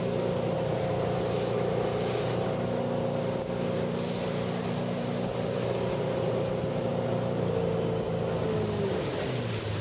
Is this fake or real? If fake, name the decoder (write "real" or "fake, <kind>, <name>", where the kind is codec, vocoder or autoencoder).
real